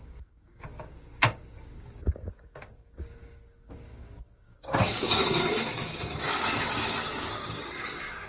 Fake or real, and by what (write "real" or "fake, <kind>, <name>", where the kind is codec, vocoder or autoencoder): fake, codec, DAC